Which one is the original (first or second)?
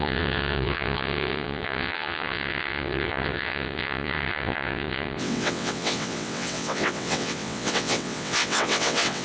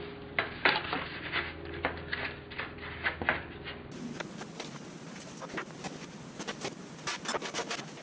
second